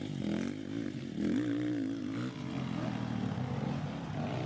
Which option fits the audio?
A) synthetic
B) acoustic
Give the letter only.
B